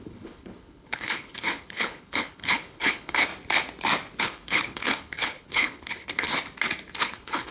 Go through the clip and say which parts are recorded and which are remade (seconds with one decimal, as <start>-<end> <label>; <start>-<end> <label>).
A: 0.0-3.3 remade; 3.3-4.2 recorded; 4.2-6.3 remade; 6.3-7.0 recorded; 7.0-7.5 remade